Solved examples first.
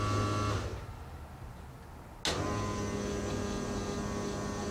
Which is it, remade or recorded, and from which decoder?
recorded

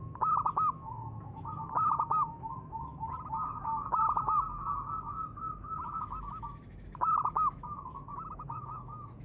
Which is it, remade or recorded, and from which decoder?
remade, autoencoder, DAC-VAE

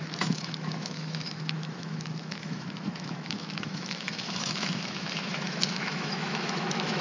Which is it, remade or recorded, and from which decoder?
remade, autoencoder, DAC-VAE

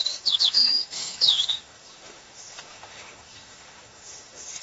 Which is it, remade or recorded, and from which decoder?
remade, autoencoder, DAC-VAE